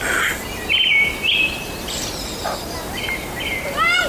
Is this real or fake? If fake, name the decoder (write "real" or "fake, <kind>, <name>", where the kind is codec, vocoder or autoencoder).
real